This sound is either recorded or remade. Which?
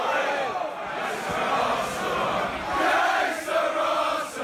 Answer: recorded